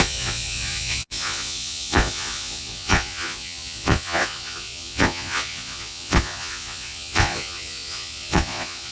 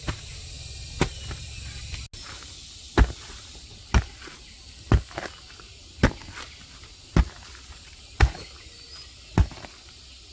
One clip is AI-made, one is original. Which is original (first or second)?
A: second